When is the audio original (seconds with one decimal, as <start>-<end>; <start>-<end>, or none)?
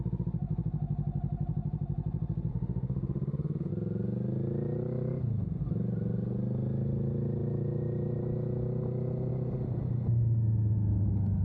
0.0-2.5; 3.7-11.4